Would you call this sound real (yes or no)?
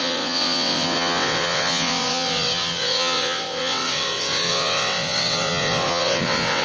no